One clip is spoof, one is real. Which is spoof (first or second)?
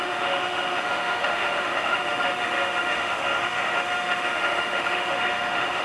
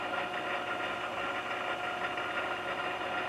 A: first